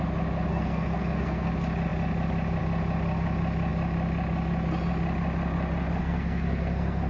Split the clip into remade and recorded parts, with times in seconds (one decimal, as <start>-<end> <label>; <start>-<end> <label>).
0.0-0.5 recorded; 0.5-1.5 remade; 1.5-6.0 recorded; 6.0-7.1 remade